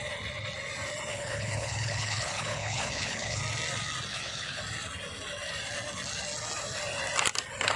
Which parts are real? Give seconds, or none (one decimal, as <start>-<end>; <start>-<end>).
0.0-1.1; 3.4-4.1; 4.6-7.8